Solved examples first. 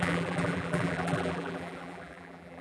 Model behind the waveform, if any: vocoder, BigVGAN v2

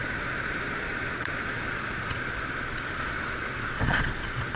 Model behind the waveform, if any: vocoder, Vocos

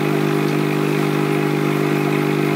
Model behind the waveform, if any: none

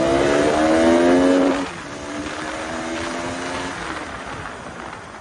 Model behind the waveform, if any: none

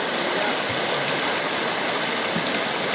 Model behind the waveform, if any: none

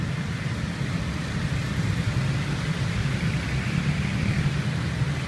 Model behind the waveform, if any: none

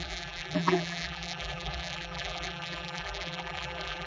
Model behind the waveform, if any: vocoder, BigVGAN v2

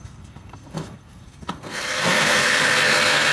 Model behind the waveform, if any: codec, SNAC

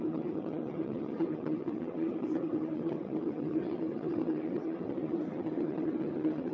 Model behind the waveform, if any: vocoder, WaveNeXt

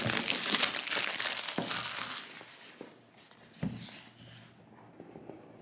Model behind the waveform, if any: none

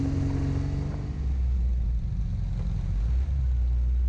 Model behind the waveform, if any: none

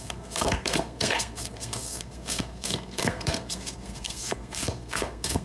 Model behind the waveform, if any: codec, SNAC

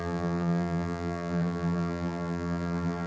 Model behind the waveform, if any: vocoder, BigVGAN v2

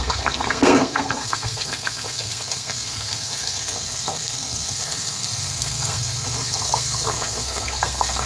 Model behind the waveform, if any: codec, SNAC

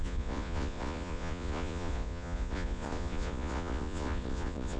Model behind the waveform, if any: vocoder, Vocos